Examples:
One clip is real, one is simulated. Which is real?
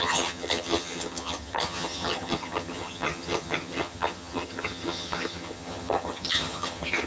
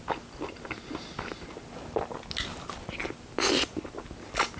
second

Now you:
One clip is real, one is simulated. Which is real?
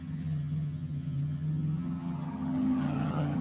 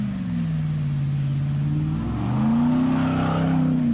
second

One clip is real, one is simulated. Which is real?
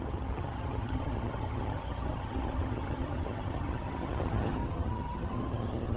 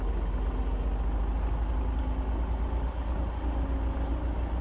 second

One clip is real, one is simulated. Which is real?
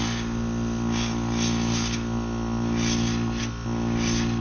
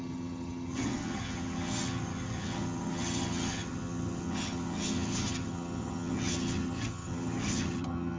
first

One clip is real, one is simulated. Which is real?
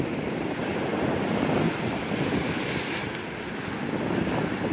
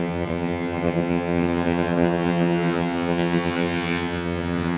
first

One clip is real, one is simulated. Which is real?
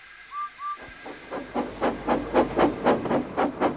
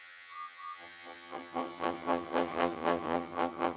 first